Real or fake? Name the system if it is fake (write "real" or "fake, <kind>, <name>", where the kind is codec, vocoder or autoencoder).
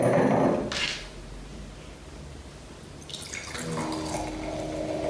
real